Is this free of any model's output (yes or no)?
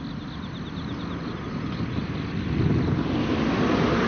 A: yes